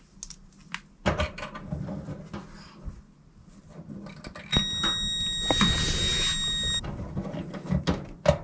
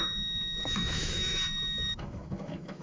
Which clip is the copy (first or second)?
second